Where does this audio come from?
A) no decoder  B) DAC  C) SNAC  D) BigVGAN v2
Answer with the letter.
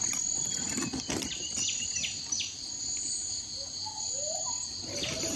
A